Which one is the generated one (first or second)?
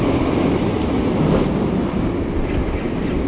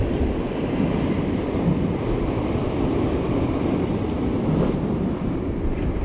second